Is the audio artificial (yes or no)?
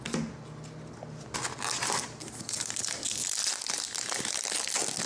no